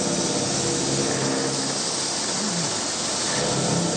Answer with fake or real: real